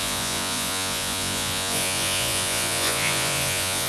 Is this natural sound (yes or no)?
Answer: no